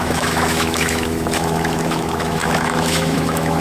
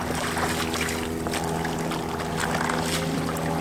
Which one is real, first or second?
second